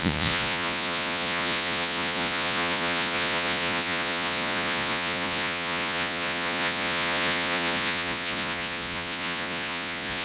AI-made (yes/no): yes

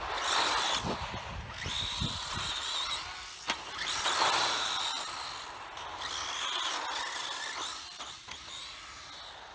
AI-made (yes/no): no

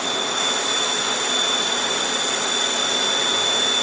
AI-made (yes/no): no